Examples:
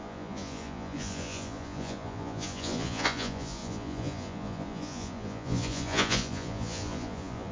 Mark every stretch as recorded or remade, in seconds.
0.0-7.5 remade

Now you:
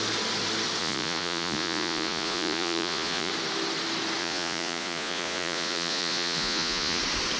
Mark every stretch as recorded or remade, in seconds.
0.0-0.8 recorded; 0.8-3.3 remade; 3.3-4.2 recorded; 4.2-7.0 remade; 7.0-7.4 recorded